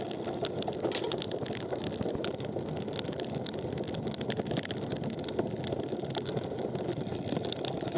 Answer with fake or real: real